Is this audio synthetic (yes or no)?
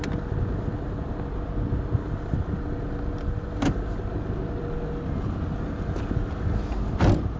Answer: no